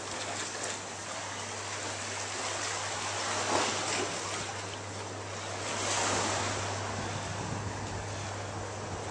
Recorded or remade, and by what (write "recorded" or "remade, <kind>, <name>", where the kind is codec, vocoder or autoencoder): recorded